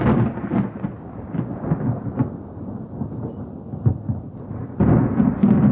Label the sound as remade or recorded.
remade